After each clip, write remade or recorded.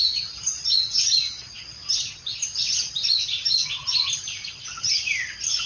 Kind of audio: recorded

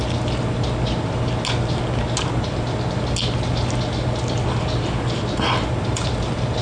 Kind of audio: recorded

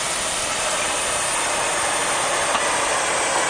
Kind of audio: recorded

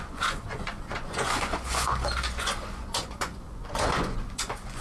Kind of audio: remade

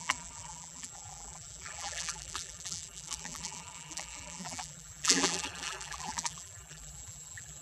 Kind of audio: remade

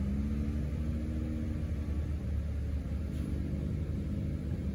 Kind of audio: recorded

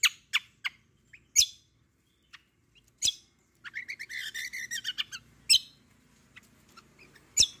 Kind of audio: recorded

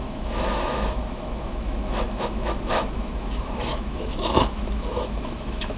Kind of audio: remade